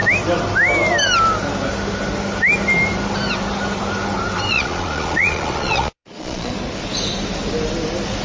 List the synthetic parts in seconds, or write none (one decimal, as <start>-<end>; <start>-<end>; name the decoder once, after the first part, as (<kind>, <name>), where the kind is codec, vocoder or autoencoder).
4.5-6.5 (vocoder, Vocos)